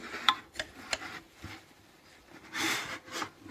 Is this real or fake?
fake